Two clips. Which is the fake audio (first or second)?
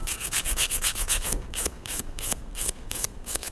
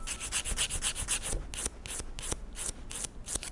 first